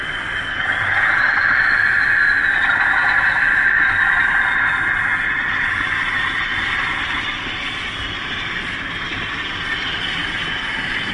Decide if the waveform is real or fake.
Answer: real